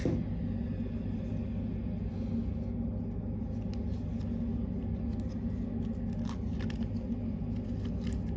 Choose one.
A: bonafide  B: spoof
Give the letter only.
A